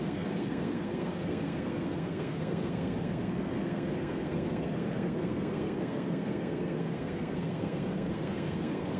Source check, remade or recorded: remade